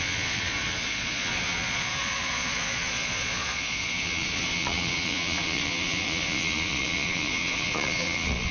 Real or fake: fake